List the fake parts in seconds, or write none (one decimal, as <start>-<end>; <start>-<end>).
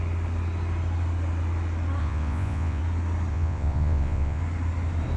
2.0-2.8; 3.3-4.4